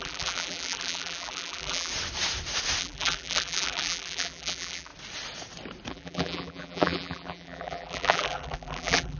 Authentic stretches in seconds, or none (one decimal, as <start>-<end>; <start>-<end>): 1.9-2.8; 4.9-5.9